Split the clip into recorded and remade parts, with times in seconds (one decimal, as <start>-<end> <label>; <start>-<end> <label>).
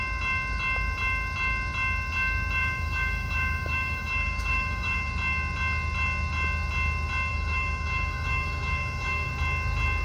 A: 0.0-2.6 recorded; 2.6-5.1 remade; 5.1-7.3 recorded; 7.3-9.3 remade; 9.3-10.0 recorded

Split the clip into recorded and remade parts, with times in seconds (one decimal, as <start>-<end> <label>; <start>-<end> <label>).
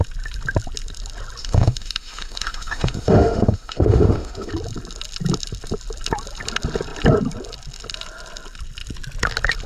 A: 0.0-1.4 recorded; 1.4-4.5 remade; 4.5-9.7 recorded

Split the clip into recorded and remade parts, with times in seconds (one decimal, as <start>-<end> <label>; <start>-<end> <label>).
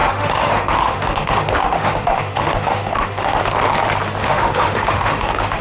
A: 0.0-3.4 remade; 3.4-4.2 recorded; 4.2-5.6 remade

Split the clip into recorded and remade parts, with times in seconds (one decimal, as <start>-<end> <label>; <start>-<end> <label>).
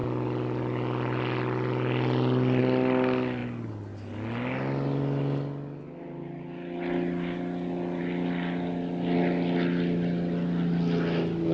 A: 0.0-11.5 recorded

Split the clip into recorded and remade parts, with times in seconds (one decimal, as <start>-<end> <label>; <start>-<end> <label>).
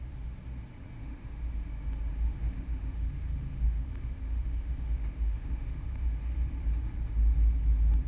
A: 0.0-1.0 recorded; 1.0-1.5 remade; 1.5-2.1 recorded; 2.1-6.1 remade; 6.1-8.1 recorded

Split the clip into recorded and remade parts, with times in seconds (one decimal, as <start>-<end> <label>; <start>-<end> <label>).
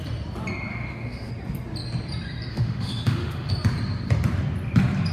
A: 0.0-0.7 recorded; 0.7-1.3 remade; 1.3-2.5 recorded; 2.5-3.5 remade; 3.5-5.1 recorded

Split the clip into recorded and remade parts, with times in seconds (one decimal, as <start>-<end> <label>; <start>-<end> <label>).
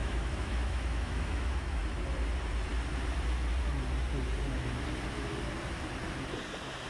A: 0.0-1.8 remade; 1.8-6.9 recorded